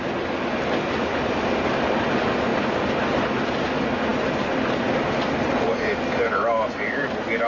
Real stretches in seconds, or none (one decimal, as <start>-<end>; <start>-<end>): 0.0-7.5